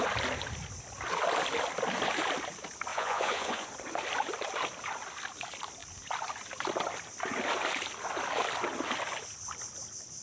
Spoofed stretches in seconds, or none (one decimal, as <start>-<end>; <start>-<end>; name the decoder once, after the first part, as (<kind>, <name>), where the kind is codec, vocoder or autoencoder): 2.9-3.7 (vocoder, Vocos)